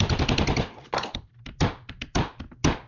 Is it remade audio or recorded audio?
recorded